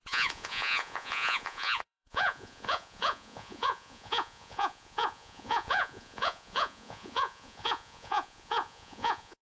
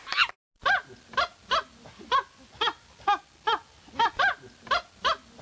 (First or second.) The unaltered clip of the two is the second